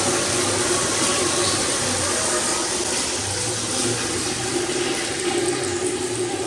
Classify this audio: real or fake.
real